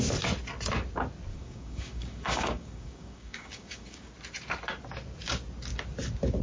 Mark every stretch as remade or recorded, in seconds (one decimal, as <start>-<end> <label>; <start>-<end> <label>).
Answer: 0.0-1.3 recorded; 1.3-4.1 remade; 4.1-6.4 recorded